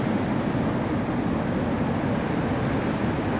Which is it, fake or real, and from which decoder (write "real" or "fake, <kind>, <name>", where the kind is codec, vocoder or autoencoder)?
real